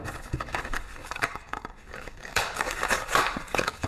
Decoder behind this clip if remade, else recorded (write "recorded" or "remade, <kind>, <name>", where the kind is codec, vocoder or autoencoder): remade, codec, DAC